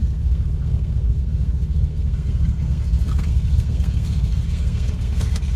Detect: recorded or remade remade